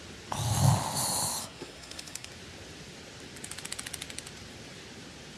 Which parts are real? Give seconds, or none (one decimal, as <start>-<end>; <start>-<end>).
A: 0.0-1.4; 2.3-5.4